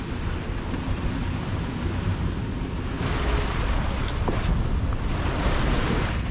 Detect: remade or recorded recorded